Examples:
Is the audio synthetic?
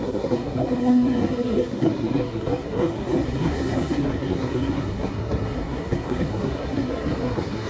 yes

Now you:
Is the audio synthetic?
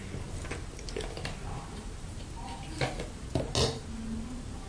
no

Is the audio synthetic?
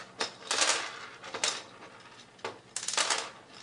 no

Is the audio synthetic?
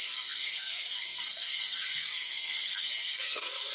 yes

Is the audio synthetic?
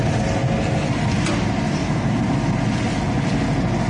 no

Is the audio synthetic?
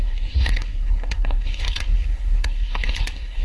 yes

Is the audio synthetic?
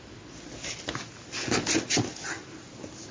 no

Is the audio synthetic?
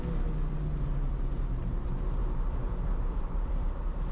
no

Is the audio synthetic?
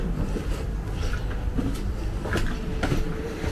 no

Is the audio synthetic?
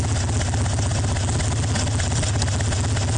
no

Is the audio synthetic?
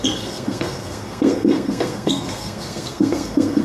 yes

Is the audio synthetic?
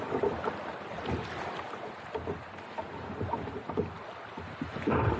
no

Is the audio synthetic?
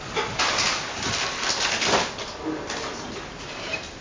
no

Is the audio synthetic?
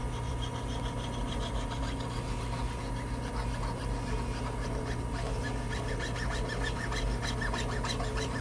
no